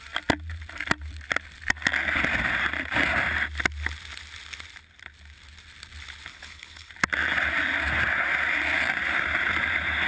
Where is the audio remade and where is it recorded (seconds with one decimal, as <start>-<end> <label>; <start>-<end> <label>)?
0.0-6.3 recorded; 6.3-6.9 remade; 6.9-10.1 recorded